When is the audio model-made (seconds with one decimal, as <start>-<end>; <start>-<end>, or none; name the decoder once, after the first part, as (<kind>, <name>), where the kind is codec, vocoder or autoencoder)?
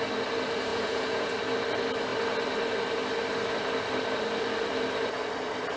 0.7-1.3 (vocoder, Vocos)